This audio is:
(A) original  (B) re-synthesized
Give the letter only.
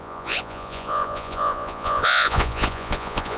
B